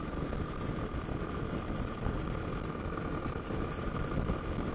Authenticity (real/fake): real